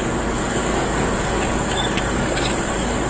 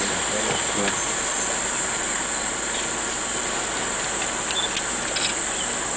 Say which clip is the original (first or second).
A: second